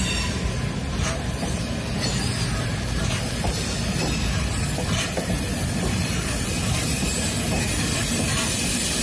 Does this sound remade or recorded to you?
recorded